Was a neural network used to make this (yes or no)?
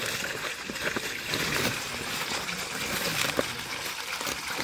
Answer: no